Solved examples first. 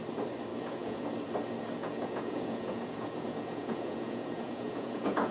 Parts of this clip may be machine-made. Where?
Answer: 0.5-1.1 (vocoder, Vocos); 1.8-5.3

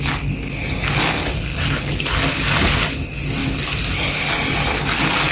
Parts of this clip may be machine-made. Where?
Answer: none

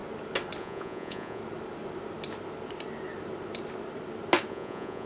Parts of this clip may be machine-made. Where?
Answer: 0.6-1.4 (vocoder, Vocos); 4.5-5.1

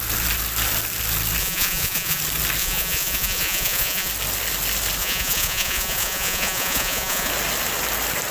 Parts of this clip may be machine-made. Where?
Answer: 1.4-2.2 (vocoder, Vocos); 2.6-4.1; 5.0-7.3

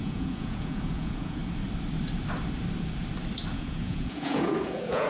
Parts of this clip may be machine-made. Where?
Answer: 0.0-1.4 (vocoder, Vocos); 3.5-5.1